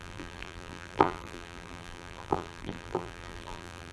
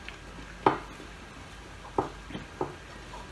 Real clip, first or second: second